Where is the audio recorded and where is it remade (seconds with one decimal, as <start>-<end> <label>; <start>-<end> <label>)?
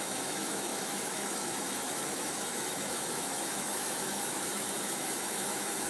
0.0-5.9 remade